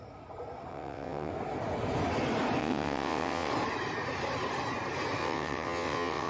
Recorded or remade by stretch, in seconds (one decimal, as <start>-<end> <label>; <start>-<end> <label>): 0.0-0.7 recorded; 0.7-1.3 remade; 1.3-2.6 recorded; 2.6-3.5 remade; 3.5-5.2 recorded; 5.2-6.3 remade